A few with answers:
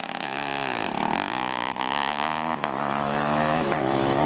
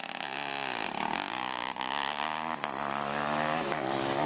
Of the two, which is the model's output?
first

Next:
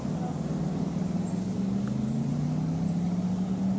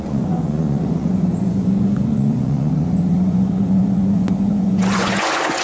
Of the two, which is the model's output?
second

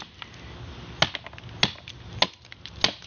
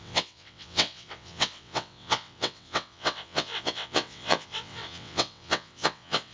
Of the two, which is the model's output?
second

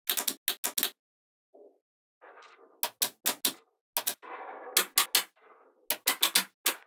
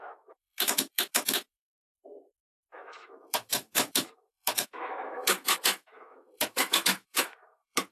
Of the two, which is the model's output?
second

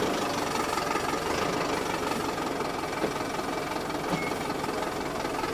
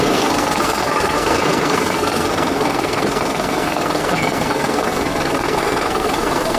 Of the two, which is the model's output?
second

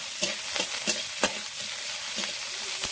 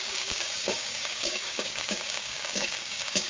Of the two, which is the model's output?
second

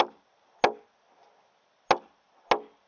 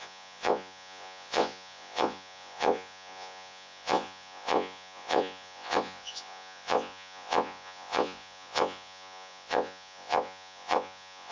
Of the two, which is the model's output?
second